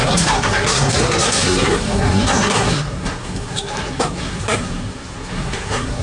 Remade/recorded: remade